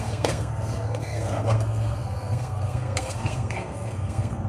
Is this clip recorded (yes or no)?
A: no